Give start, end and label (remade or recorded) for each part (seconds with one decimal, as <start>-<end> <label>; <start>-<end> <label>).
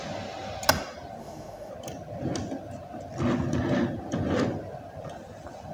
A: 0.0-1.2 recorded; 1.2-1.7 remade; 1.7-5.7 recorded